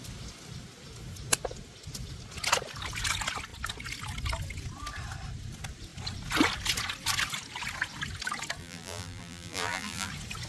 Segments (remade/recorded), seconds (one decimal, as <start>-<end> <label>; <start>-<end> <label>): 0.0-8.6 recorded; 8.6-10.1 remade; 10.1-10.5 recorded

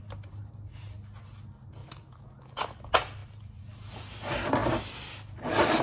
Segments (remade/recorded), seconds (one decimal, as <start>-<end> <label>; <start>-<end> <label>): 0.0-1.8 recorded; 1.8-2.8 remade; 2.8-5.8 recorded

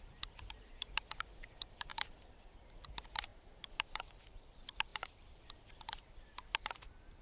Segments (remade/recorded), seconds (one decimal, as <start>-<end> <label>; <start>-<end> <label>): 0.0-3.3 recorded; 3.3-4.2 remade; 4.2-4.9 recorded; 4.9-5.4 remade; 5.4-7.2 recorded

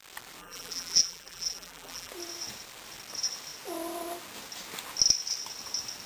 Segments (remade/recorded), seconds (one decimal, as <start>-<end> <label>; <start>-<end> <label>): 0.0-0.4 recorded; 0.4-2.1 remade; 2.1-6.1 recorded

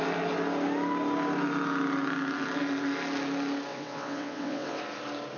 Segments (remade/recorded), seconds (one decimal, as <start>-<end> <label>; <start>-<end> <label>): 0.0-3.7 recorded; 3.7-4.8 remade; 4.8-5.4 recorded

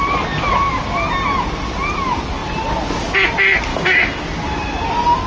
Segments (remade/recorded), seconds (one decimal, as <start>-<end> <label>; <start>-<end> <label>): 0.0-3.7 recorded; 3.7-4.2 remade; 4.2-5.3 recorded

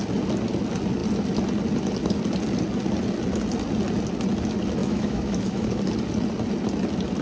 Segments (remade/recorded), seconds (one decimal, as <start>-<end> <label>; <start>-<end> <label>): 0.0-4.8 recorded; 4.8-5.8 remade; 5.8-7.2 recorded

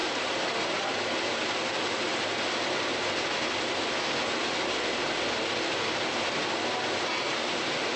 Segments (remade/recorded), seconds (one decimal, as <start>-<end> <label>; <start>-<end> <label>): 0.0-8.0 recorded